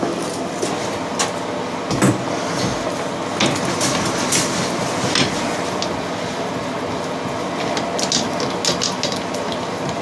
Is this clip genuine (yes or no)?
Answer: yes